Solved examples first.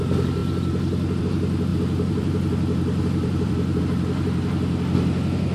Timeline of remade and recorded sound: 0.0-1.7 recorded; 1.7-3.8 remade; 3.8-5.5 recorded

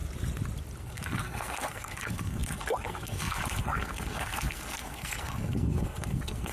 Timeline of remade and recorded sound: 0.0-0.8 recorded; 0.8-6.5 remade

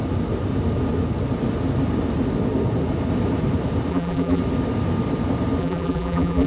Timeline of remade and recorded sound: 0.0-3.9 recorded; 3.9-4.4 remade; 4.4-5.6 recorded; 5.6-6.5 remade

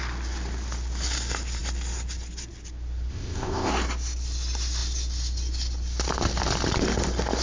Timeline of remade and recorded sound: 0.0-3.1 recorded; 3.1-3.7 remade; 3.7-7.4 recorded

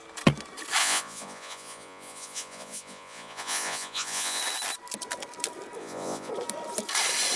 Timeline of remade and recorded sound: 0.0-0.8 recorded; 0.8-4.4 remade; 4.4-5.8 recorded; 5.8-6.3 remade; 6.3-7.4 recorded

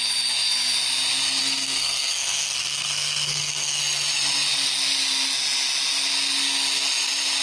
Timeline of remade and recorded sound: 0.0-1.4 recorded; 1.4-3.8 remade; 3.8-7.4 recorded

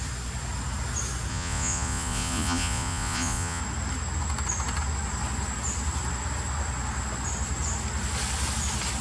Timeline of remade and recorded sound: 0.0-1.3 recorded; 1.3-3.6 remade; 3.6-9.0 recorded

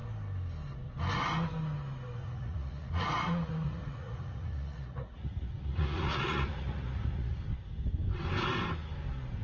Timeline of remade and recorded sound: 0.0-2.2 recorded; 2.2-7.4 remade; 7.4-9.4 recorded